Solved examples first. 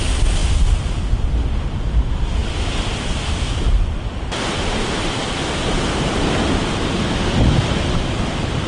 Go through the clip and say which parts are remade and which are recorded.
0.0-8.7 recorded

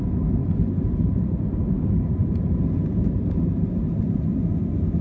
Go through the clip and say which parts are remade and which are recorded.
0.0-4.3 remade; 4.3-5.0 recorded

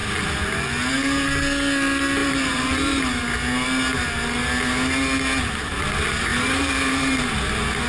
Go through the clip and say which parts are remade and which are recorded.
0.0-2.2 recorded; 2.2-3.0 remade; 3.0-6.3 recorded; 6.3-7.2 remade; 7.2-7.9 recorded

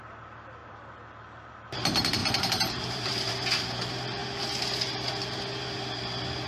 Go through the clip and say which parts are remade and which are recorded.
0.0-2.2 recorded; 2.2-3.3 remade; 3.3-6.5 recorded

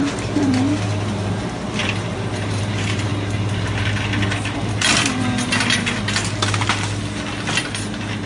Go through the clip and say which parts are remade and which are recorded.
0.0-3.1 remade; 3.1-7.6 recorded; 7.6-8.3 remade

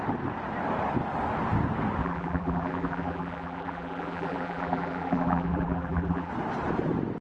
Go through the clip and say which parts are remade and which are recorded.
0.0-2.0 recorded; 2.0-6.3 remade; 6.3-7.2 recorded

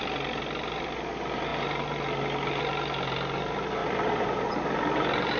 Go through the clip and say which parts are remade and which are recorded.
0.0-3.8 recorded; 3.8-4.5 remade; 4.5-5.4 recorded

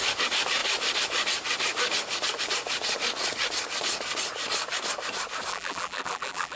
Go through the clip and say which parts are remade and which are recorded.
0.0-5.5 recorded; 5.5-6.6 remade